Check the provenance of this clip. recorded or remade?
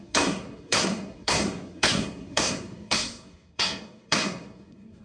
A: remade